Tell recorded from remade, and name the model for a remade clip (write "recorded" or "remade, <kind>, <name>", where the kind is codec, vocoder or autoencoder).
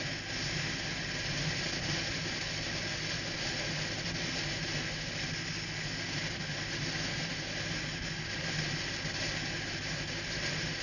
recorded